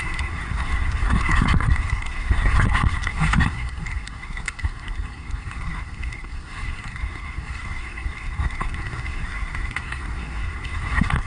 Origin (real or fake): fake